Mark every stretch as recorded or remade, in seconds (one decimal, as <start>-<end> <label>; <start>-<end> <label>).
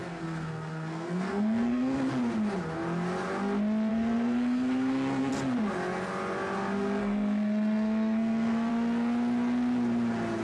0.0-2.1 remade; 2.1-3.9 recorded; 3.9-5.3 remade; 5.3-7.0 recorded; 7.0-8.7 remade; 8.7-10.4 recorded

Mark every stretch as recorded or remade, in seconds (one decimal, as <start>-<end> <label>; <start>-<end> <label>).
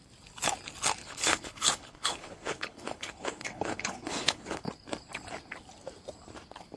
0.0-1.0 recorded; 1.0-4.7 remade; 4.7-6.8 recorded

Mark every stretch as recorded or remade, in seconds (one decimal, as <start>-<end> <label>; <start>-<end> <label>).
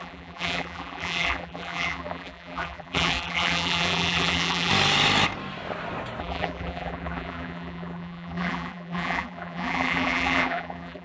0.0-4.7 remade; 4.7-6.2 recorded; 6.2-11.0 remade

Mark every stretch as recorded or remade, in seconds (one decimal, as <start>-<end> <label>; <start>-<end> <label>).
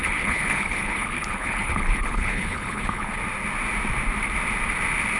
0.0-3.1 remade; 3.1-5.2 recorded